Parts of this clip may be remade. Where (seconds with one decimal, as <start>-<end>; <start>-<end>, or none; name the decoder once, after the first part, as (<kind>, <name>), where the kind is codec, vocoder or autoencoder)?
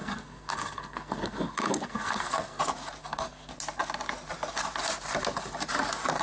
0.0-2.6 (codec, SNAC); 3.0-3.5